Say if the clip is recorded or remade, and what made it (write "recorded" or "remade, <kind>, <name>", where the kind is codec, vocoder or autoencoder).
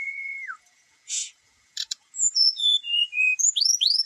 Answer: remade, vocoder, Vocos